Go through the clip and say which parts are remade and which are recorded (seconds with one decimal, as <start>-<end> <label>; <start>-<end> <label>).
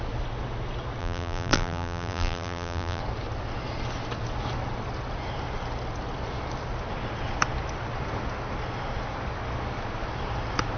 0.0-1.0 recorded; 1.0-3.0 remade; 3.0-10.8 recorded